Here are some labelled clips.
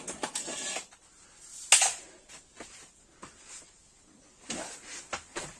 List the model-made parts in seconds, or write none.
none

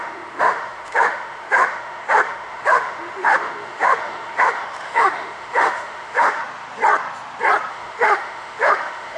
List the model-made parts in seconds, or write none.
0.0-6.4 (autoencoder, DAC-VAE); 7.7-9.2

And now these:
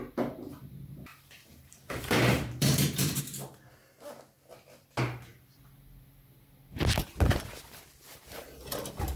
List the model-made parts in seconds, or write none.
1.1-3.2 (vocoder, BigVGAN v2)

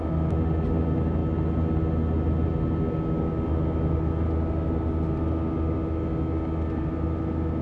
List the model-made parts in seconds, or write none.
none

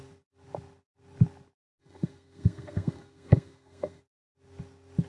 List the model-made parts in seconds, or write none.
1.7-4.0 (codec, SNAC)

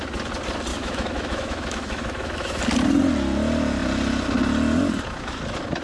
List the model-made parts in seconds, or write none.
0.7-2.6 (autoencoder, DAC-VAE)

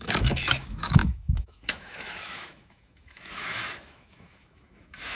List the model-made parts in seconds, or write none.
0.0-5.2 (autoencoder, DAC-VAE)